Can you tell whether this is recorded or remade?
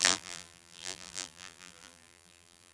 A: remade